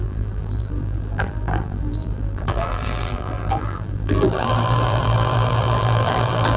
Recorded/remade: remade